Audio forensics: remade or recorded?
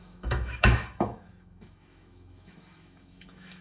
remade